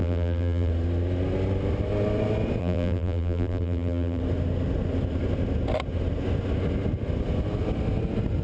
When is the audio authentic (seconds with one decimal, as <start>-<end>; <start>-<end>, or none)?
0.7-2.6; 4.2-8.4